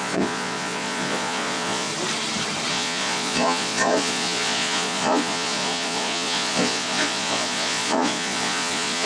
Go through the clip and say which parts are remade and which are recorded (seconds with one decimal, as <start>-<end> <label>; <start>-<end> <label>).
0.0-1.9 remade; 1.9-2.7 recorded; 2.7-9.1 remade